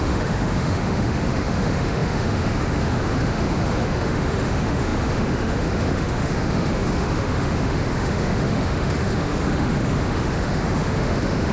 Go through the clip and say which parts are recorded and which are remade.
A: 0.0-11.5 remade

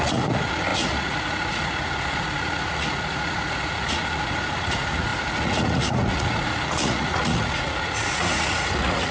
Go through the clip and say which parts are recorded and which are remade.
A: 0.0-9.1 remade

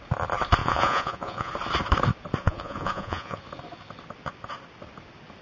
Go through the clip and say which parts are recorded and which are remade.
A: 0.0-0.6 recorded; 0.6-1.5 remade; 1.5-2.4 recorded; 2.4-3.4 remade; 3.4-5.4 recorded

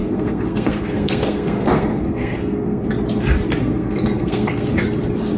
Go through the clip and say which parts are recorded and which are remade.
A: 0.0-2.9 remade; 2.9-3.6 recorded; 3.6-4.8 remade; 4.8-5.4 recorded

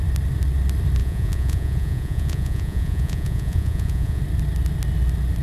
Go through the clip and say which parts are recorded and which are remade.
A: 0.0-1.0 recorded; 1.0-4.2 remade; 4.2-5.4 recorded